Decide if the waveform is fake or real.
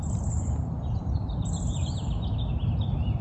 fake